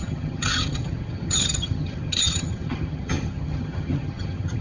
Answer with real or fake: fake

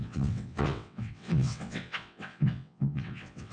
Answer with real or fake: fake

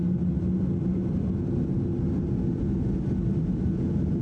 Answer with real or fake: real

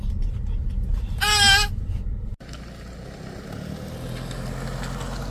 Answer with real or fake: real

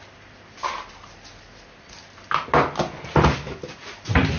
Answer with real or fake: real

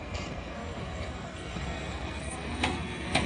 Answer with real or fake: fake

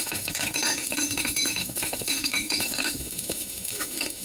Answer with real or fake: fake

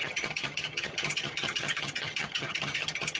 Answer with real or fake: fake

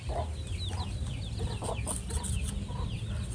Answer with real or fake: real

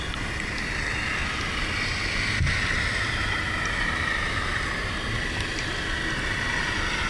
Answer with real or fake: real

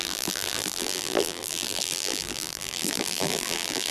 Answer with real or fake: fake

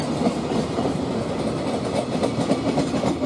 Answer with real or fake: real